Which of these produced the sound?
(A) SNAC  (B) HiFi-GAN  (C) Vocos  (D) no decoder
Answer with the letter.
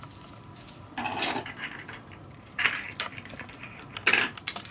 D